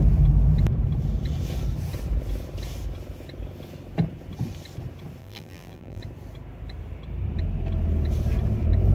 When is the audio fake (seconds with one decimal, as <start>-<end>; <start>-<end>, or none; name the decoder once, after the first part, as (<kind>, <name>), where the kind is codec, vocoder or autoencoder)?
5.2-6.0 (vocoder, BigVGAN v2)